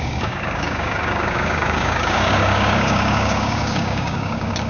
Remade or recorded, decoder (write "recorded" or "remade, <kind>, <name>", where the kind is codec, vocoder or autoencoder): remade, codec, DAC